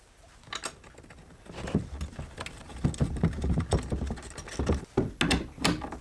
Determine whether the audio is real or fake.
real